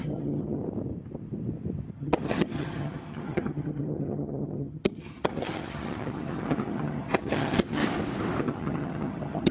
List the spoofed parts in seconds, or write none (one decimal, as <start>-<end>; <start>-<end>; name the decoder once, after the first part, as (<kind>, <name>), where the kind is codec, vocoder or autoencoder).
0.0-0.6 (vocoder, HiFi-GAN); 1.9-7.8; 8.4-9.5